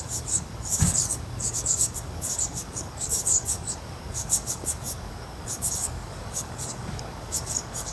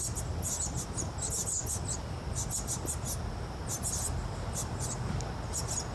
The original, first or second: second